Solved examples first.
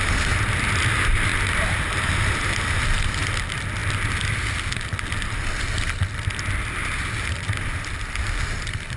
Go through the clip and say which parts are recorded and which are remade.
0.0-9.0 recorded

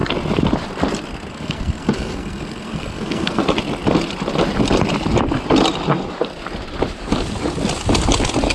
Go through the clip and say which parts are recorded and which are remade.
0.0-1.3 recorded; 1.3-3.4 remade; 3.4-8.5 recorded

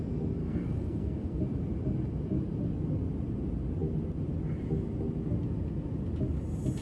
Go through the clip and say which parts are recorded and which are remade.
0.0-0.4 recorded; 0.4-1.4 remade; 1.4-6.8 recorded

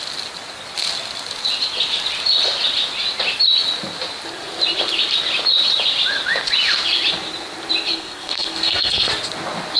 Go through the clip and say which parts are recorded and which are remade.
0.0-7.9 recorded; 7.9-9.1 remade; 9.1-9.8 recorded

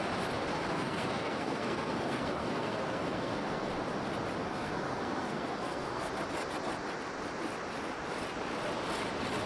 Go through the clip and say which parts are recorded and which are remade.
0.0-0.7 recorded; 0.7-3.7 remade; 3.7-4.4 recorded; 4.4-6.1 remade; 6.1-9.5 recorded

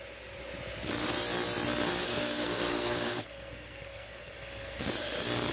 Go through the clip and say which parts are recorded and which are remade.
0.0-2.1 recorded; 2.1-4.9 remade; 4.9-5.5 recorded